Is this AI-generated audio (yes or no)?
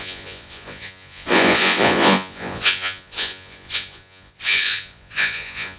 yes